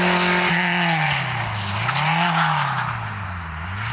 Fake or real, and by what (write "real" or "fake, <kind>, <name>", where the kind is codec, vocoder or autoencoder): real